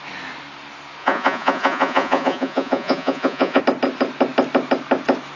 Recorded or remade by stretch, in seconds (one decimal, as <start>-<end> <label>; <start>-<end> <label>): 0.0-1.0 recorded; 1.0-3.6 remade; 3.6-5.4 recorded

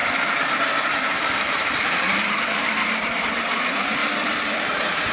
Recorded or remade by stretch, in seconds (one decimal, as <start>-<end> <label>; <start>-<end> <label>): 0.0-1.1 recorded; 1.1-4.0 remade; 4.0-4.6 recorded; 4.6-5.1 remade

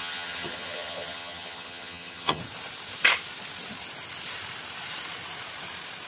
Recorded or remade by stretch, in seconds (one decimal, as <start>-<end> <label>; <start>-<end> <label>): 0.0-2.4 remade; 2.4-6.1 recorded

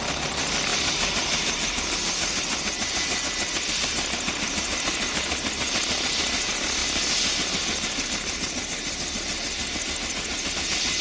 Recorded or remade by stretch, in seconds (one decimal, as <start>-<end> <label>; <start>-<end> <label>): 0.0-11.0 recorded

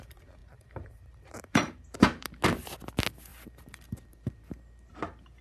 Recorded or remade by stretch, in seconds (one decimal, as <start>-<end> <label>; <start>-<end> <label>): 0.0-0.4 recorded; 0.4-2.3 remade; 2.3-3.3 recorded; 3.3-4.9 remade; 4.9-5.4 recorded

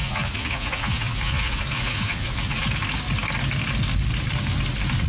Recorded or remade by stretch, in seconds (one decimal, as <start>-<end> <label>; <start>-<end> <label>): 0.0-2.6 remade; 2.6-5.1 recorded